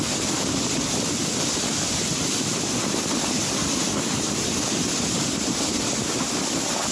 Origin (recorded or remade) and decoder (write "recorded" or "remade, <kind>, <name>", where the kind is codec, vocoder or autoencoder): recorded